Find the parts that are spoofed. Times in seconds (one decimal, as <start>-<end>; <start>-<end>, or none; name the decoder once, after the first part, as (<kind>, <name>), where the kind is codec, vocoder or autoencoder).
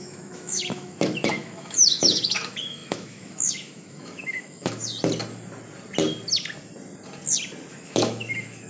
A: 0.0-4.8 (autoencoder, DAC-VAE); 7.7-8.7